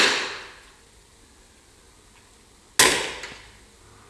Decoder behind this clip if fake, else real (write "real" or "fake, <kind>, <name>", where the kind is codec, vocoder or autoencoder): real